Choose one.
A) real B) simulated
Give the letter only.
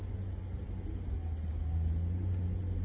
A